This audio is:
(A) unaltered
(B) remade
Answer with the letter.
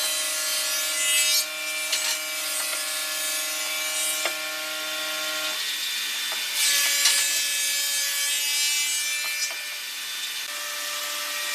A